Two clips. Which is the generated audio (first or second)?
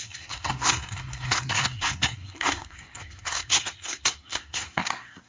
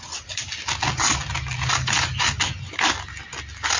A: first